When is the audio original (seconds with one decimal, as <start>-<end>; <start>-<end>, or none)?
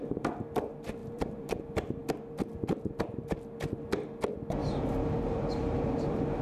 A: 0.0-1.0; 1.6-4.6